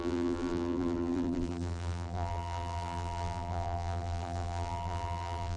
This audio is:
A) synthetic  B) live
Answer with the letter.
A